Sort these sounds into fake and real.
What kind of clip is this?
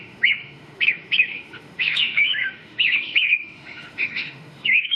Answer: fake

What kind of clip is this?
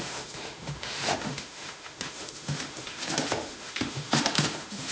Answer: fake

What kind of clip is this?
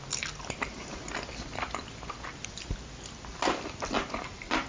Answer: real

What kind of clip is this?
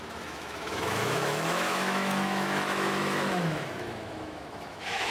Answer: fake